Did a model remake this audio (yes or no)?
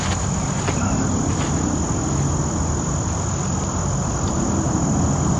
no